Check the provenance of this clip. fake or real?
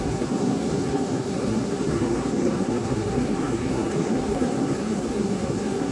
fake